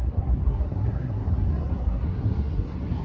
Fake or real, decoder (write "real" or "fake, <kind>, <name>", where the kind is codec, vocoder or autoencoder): fake, codec, SNAC